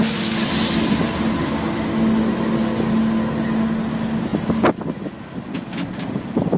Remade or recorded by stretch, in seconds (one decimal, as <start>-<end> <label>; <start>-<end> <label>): 0.0-6.6 recorded